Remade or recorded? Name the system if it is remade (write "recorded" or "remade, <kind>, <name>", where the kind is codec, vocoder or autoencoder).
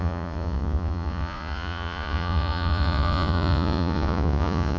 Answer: remade, vocoder, Vocos